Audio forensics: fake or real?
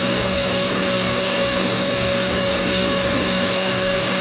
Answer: fake